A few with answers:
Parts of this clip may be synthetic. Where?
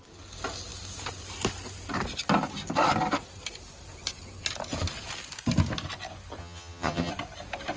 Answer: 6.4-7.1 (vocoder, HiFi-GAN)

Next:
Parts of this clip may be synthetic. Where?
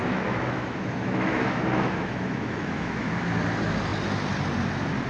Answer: 0.0-3.1 (autoencoder, DAC-VAE)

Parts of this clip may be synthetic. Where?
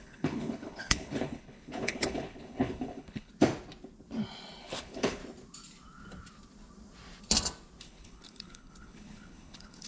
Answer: 0.0-3.3 (codec, HILCodec); 4.6-5.2; 7.8-9.9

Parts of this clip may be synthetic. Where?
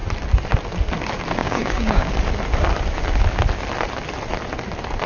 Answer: 1.4-2.1 (codec, DAC)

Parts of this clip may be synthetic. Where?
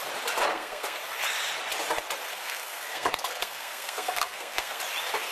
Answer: 0.5-1.0 (codec, SNAC); 2.3-4.8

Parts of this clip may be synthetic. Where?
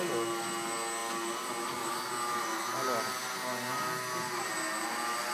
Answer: none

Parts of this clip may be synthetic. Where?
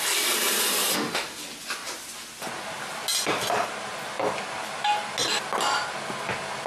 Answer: 0.9-1.4 (autoencoder, DAC-VAE)